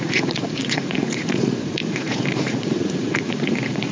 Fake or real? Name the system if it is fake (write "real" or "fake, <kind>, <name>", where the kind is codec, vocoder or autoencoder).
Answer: fake, vocoder, Vocos